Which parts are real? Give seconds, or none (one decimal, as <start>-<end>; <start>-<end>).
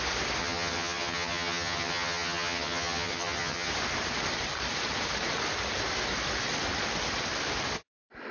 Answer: 0.0-0.4; 3.7-8.3